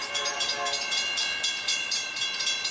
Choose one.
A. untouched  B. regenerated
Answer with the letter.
A